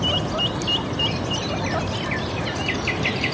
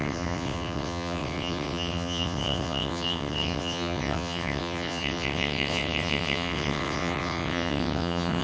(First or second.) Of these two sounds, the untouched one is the first